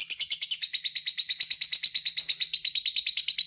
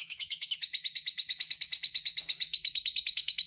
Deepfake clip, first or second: second